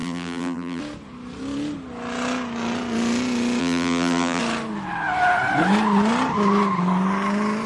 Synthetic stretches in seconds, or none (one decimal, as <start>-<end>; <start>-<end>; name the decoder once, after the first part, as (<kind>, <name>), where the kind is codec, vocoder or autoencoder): 0.0-0.8 (vocoder, BigVGAN v2); 3.6-4.4